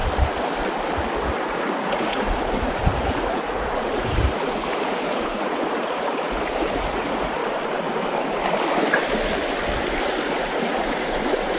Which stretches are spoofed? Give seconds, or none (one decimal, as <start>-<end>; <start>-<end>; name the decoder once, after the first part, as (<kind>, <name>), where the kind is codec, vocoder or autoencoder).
1.4-7.4 (vocoder, Vocos); 10.0-11.6